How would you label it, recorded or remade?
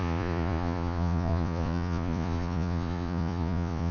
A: remade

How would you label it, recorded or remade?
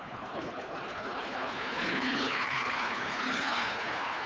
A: remade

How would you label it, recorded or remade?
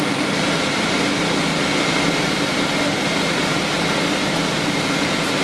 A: recorded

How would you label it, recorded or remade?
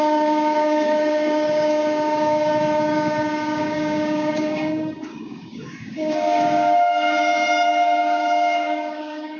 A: remade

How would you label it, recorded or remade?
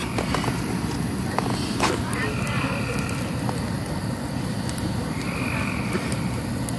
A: recorded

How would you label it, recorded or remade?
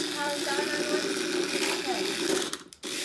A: remade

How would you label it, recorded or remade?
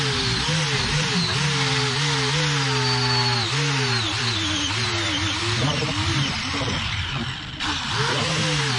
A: recorded